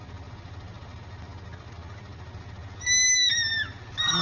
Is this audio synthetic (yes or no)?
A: no